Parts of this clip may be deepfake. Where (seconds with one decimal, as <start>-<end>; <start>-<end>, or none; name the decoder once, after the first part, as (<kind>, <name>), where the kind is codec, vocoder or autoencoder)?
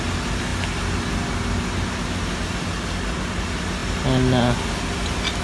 none